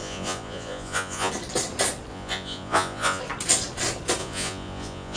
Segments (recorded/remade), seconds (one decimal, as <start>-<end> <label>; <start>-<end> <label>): 0.0-1.3 remade; 1.3-2.1 recorded; 2.1-3.2 remade; 3.2-4.2 recorded; 4.2-5.2 remade